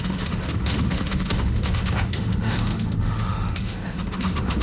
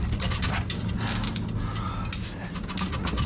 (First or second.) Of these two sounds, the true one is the second